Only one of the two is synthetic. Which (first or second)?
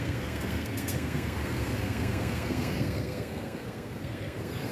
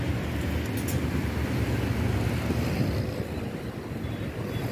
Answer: first